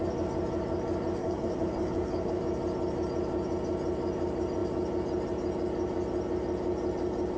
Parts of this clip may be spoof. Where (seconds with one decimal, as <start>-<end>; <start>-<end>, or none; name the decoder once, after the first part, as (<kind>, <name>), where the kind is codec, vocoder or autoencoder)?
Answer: 1.2-2.4 (codec, HILCodec)